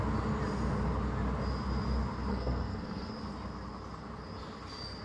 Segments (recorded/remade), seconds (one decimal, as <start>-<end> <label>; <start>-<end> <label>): 0.0-2.3 recorded; 2.3-3.1 remade; 3.1-5.0 recorded